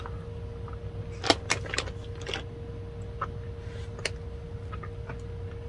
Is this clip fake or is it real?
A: real